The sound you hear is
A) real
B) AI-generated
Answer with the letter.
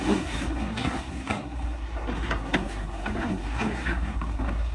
B